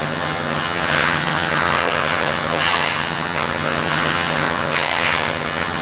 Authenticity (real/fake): fake